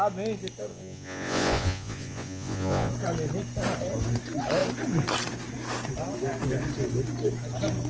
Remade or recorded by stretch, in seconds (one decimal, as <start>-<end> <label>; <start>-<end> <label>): 0.0-0.7 recorded; 0.7-2.9 remade; 2.9-7.9 recorded